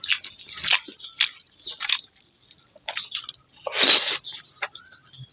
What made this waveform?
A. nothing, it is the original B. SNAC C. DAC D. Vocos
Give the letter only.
A